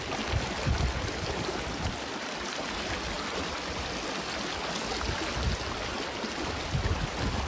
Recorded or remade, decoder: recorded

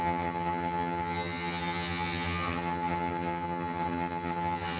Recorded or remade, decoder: remade, vocoder, HiFi-GAN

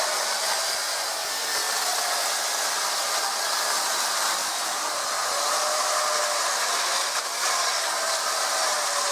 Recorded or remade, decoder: recorded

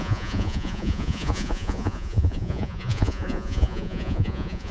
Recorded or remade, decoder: remade, vocoder, Vocos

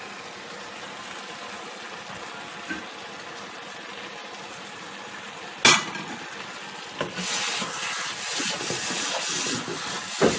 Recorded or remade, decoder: recorded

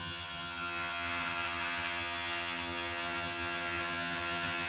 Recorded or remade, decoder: remade, vocoder, HiFi-GAN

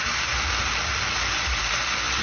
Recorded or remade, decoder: recorded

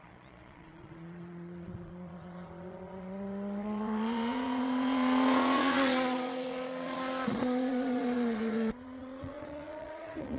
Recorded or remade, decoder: remade, vocoder, Vocos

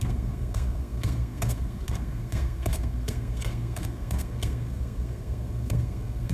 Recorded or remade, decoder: remade, codec, SNAC